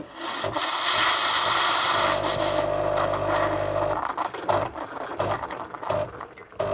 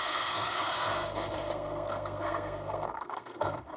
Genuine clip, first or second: first